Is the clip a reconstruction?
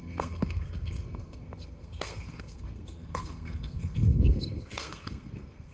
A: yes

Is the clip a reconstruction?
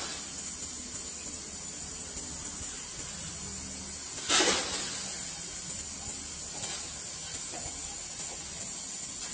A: no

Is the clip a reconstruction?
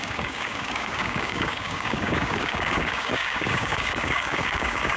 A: yes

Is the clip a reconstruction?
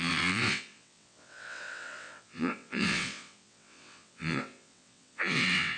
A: yes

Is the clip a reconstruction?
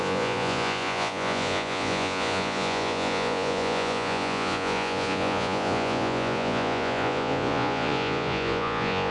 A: yes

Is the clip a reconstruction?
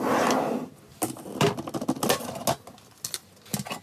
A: no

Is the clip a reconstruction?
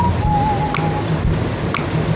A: no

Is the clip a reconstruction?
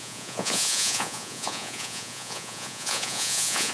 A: yes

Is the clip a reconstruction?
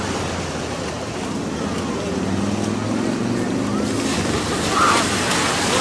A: no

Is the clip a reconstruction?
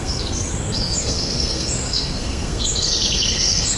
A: yes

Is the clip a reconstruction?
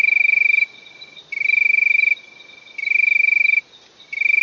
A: no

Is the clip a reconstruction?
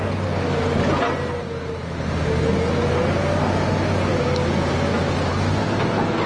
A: no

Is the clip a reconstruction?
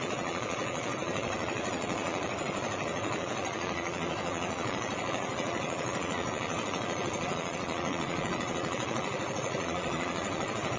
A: yes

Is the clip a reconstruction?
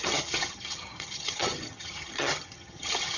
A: yes